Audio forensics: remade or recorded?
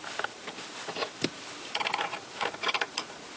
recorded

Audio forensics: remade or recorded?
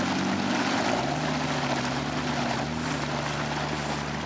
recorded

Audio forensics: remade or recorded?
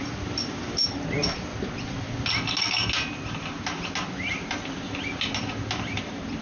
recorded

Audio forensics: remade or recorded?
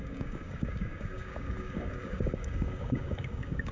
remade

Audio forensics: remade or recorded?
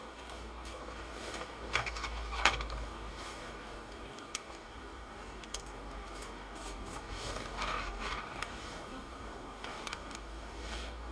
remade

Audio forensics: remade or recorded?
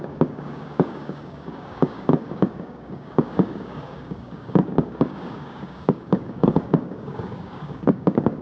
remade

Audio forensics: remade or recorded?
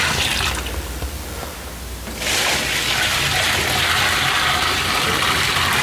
recorded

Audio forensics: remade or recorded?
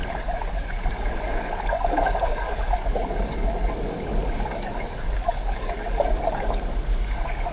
remade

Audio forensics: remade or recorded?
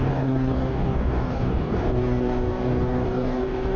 remade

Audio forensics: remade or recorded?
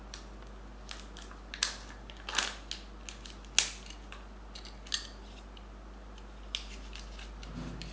recorded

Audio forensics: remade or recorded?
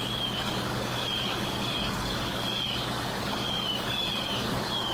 remade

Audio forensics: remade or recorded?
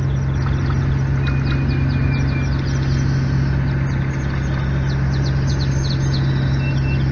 recorded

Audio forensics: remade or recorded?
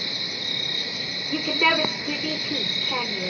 recorded